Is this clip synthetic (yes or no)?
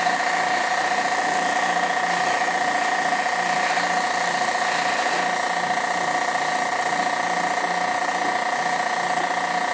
no